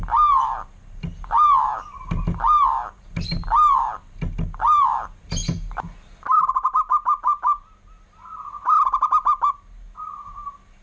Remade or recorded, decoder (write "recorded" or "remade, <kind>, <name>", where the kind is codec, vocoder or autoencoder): recorded